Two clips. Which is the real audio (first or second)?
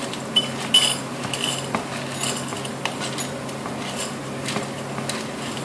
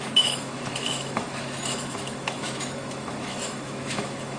first